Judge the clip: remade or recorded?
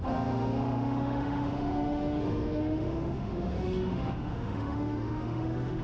remade